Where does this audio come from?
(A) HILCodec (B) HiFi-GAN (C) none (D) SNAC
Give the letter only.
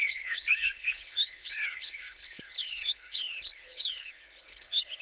A